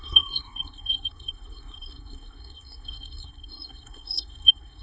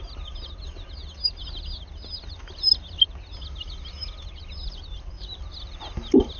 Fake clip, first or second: first